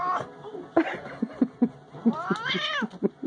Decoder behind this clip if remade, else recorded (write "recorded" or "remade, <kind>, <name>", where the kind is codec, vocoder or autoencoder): recorded